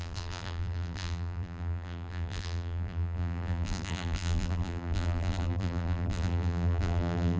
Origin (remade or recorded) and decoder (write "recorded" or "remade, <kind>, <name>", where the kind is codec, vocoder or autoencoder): remade, vocoder, BigVGAN v2